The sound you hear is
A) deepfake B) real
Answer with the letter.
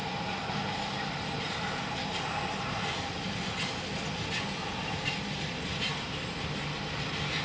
B